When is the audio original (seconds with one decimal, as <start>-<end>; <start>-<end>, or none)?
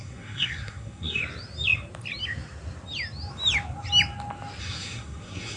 1.2-4.6